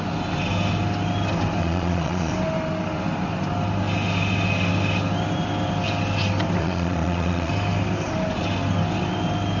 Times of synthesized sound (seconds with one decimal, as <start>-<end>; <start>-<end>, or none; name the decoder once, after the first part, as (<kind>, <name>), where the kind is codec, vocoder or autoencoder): 1.6-2.3 (vocoder, Vocos); 6.6-7.5